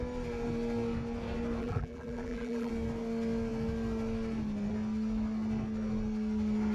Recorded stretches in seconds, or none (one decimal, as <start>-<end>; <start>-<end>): 0.0-1.6; 2.7-6.7